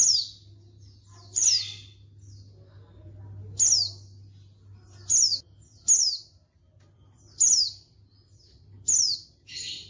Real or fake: real